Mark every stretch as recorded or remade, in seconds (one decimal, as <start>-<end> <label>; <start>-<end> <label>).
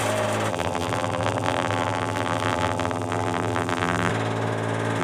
0.0-0.5 recorded; 0.5-4.1 remade; 4.1-5.0 recorded